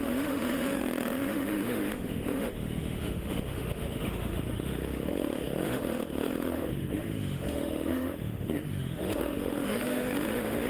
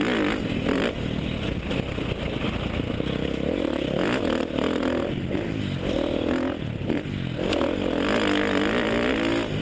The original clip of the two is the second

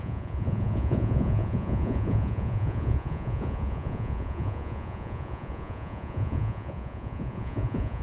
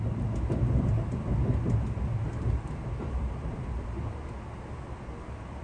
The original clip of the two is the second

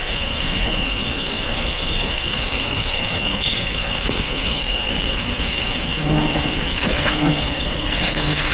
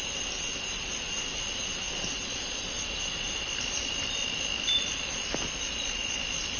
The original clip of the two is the second